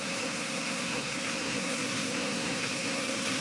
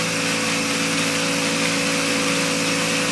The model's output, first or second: first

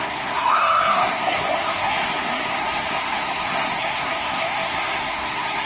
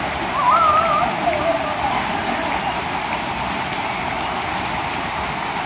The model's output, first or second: first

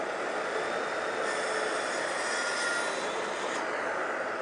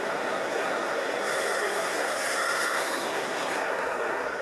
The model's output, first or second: second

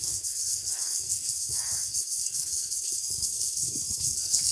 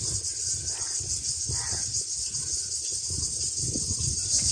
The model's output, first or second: first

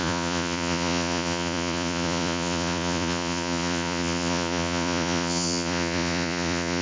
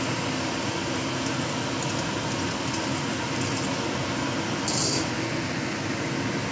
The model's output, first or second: first